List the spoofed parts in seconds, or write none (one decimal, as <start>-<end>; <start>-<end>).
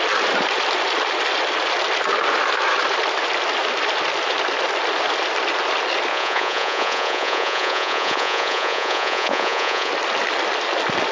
6.1-9.9